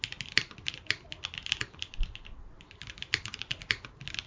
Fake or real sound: real